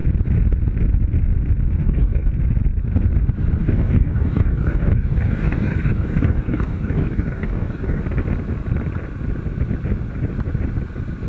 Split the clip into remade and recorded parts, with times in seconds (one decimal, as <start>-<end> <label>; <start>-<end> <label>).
0.0-1.8 recorded; 1.8-2.3 remade; 2.3-3.6 recorded; 3.6-8.0 remade; 8.0-11.3 recorded